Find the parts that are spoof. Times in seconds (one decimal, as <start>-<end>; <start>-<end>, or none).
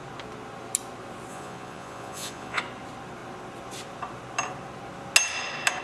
1.3-2.6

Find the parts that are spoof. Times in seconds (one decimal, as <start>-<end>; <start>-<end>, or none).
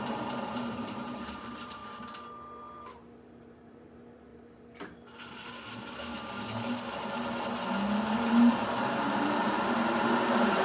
0.0-1.8; 3.2-4.3; 8.5-10.6